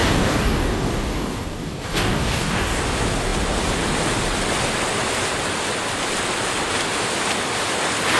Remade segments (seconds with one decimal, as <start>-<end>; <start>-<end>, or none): 0.0-2.8